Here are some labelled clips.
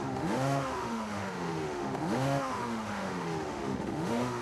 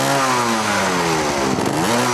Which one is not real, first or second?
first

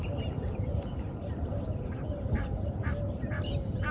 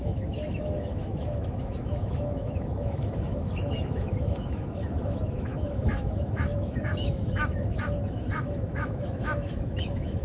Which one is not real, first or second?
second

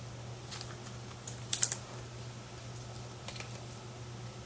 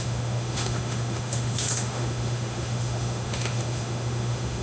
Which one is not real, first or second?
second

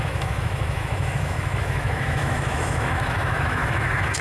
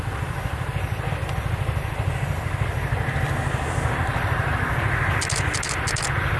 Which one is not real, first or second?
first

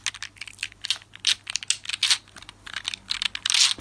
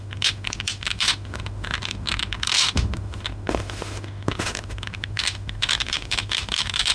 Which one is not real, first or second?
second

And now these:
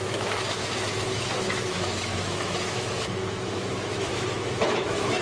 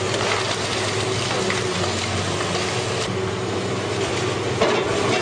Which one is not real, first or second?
first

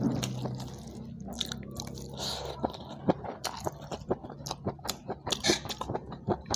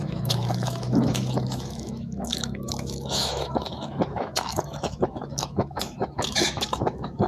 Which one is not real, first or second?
second